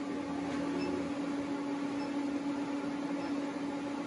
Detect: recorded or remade recorded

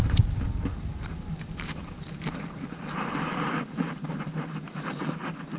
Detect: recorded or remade remade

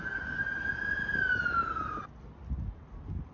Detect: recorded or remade recorded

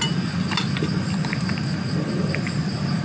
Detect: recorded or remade recorded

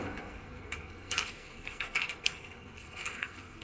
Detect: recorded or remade remade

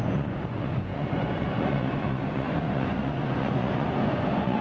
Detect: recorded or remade remade